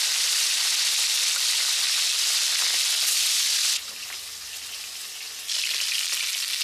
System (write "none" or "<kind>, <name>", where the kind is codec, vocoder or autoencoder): none